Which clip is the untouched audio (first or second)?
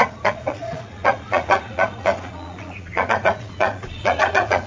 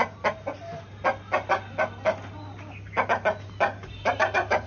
second